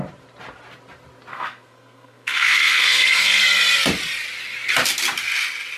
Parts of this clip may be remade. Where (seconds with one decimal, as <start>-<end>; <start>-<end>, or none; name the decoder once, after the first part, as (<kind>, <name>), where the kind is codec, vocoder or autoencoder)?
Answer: 1.3-3.4 (codec, SNAC)

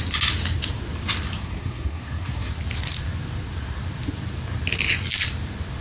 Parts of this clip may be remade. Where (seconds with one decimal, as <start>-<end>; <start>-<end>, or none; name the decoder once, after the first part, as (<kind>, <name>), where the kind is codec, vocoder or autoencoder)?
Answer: 1.4-2.5 (codec, SNAC)